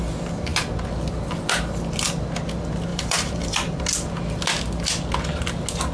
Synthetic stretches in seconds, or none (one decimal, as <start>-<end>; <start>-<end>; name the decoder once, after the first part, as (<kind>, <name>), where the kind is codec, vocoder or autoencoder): 2.9-3.8 (vocoder, BigVGAN v2)

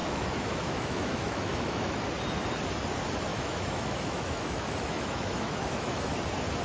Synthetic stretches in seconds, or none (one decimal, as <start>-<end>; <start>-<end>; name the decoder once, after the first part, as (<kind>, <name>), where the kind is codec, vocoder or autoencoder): 0.0-2.0 (autoencoder, DAC-VAE); 3.3-6.1

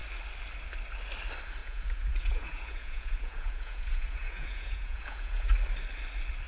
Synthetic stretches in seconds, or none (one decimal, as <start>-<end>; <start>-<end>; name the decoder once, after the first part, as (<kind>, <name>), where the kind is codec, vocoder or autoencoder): 1.6-5.5 (vocoder, Vocos)

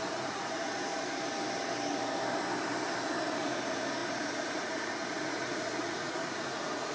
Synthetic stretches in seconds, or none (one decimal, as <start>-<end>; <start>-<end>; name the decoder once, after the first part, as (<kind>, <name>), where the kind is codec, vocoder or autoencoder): 0.0-0.9 (vocoder, Vocos); 3.4-6.9

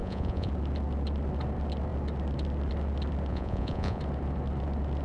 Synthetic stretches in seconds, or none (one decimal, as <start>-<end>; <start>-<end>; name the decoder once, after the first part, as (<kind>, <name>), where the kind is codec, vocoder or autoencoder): 0.0-0.5 (vocoder, Vocos); 3.3-4.0

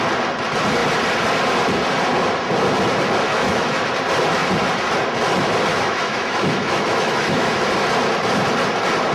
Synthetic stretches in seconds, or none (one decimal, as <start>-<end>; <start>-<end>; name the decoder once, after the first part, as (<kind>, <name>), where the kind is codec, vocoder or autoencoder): 3.3-3.8 (autoencoder, DAC-VAE); 5.7-7.6

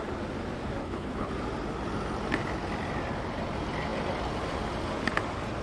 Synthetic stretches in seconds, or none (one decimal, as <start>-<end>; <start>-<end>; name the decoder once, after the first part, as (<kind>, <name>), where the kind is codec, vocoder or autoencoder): 0.8-1.3 (codec, HILCodec)